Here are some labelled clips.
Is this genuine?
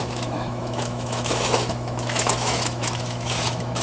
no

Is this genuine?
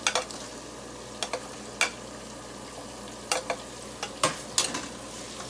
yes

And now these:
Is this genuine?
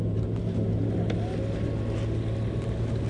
yes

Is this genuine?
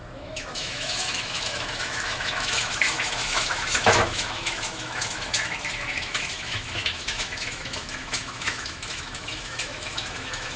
no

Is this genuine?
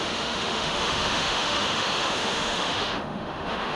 no